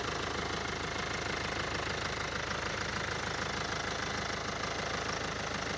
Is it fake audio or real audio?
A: real